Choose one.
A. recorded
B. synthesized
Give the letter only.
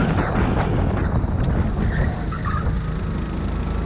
A